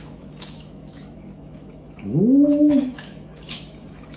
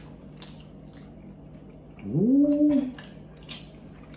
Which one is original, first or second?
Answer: second